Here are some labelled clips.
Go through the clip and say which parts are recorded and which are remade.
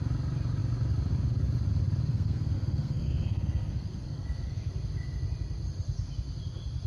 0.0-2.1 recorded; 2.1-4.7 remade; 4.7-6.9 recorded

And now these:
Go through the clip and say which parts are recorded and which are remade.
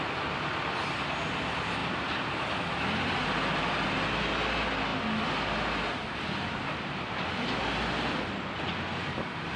0.0-1.8 recorded; 1.8-2.5 remade; 2.5-9.6 recorded